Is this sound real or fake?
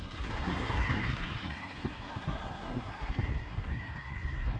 fake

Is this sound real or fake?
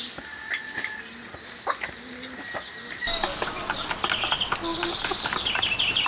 real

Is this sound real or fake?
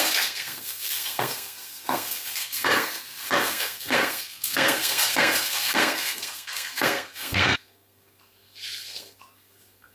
fake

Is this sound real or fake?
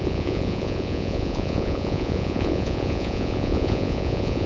fake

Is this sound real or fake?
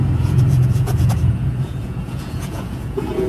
fake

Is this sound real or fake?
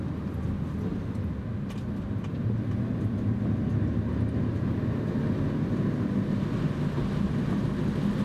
real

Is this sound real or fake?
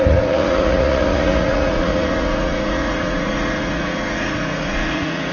fake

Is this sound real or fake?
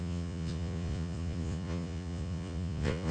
fake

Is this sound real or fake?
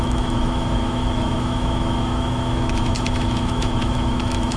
fake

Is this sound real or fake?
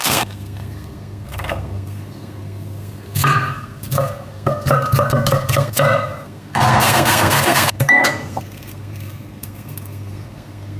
fake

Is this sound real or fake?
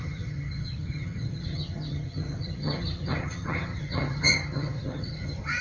fake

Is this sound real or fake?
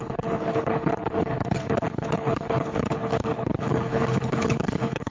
fake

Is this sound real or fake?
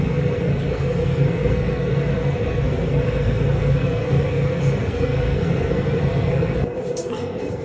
fake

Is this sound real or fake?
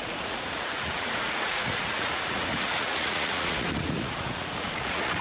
fake